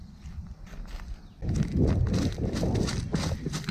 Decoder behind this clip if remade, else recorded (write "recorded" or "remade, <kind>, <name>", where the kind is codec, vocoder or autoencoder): recorded